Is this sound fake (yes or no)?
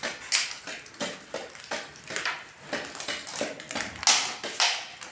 no